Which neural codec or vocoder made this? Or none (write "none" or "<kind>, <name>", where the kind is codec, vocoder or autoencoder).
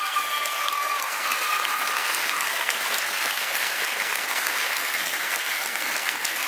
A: codec, SNAC